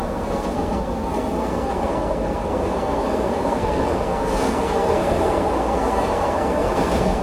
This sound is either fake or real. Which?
fake